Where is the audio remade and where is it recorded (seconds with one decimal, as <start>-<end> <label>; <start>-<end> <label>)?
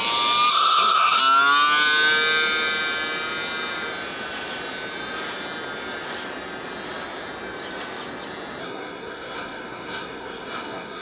0.0-0.5 recorded; 0.5-1.2 remade; 1.2-8.6 recorded; 8.6-11.0 remade